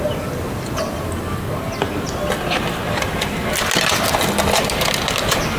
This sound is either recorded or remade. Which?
recorded